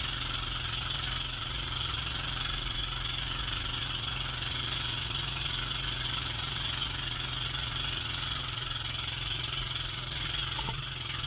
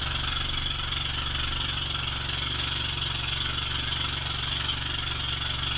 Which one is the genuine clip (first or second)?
second